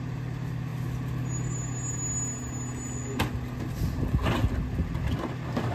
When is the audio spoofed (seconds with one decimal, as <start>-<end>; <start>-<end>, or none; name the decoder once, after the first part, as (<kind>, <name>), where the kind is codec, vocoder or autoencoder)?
none